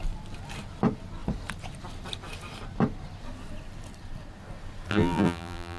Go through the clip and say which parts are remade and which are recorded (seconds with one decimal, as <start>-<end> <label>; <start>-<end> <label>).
0.0-4.9 recorded; 4.9-5.8 remade